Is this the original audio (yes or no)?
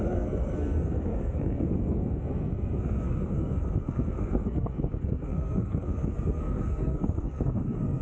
no